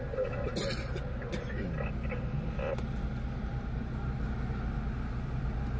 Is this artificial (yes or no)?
no